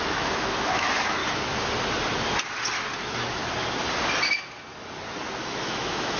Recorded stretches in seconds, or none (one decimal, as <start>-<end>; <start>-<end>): 1.2-3.0; 3.4-5.4